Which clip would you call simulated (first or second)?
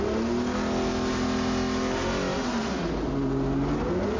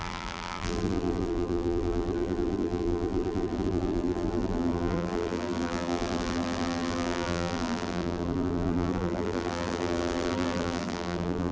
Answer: second